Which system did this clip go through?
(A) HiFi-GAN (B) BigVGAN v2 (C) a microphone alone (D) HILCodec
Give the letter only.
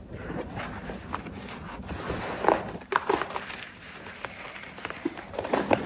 C